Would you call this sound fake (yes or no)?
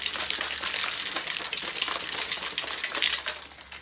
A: no